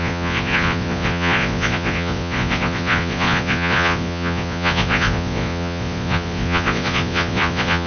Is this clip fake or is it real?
fake